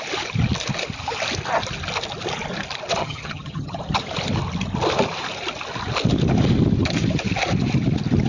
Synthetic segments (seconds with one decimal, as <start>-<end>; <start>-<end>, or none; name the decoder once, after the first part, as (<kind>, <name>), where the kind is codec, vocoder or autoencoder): 3.0-3.8 (vocoder, HiFi-GAN)